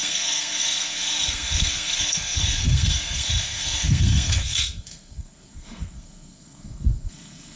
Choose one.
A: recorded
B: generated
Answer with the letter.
B